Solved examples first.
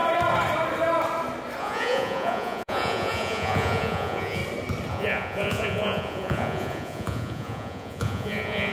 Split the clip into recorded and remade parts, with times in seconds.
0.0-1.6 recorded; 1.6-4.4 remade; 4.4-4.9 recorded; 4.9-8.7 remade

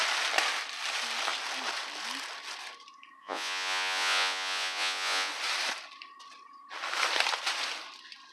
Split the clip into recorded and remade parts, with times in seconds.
0.0-3.2 recorded; 3.2-5.3 remade; 5.3-8.3 recorded

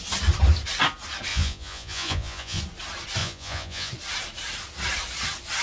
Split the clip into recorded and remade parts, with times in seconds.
0.0-1.3 recorded; 1.3-2.6 remade; 2.6-3.2 recorded; 3.2-3.9 remade; 3.9-5.6 recorded

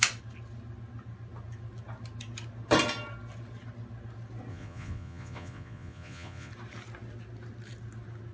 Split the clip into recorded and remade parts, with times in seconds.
0.0-4.5 recorded; 4.5-6.5 remade; 6.5-8.3 recorded

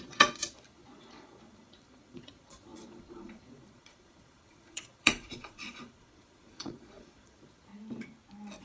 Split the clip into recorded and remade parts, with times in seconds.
0.0-7.7 remade; 7.7-8.6 recorded